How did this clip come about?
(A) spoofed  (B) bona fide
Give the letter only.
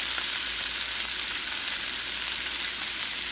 B